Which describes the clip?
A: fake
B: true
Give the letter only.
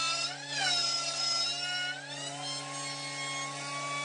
B